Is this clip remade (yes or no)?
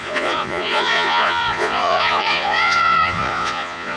yes